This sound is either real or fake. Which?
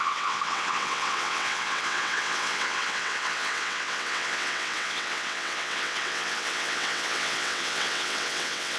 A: fake